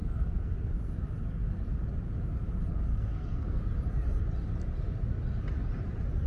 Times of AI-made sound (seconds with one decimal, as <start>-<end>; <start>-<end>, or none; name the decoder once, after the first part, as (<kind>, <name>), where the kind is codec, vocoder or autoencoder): 0.0-0.9 (codec, SNAC); 2.7-3.6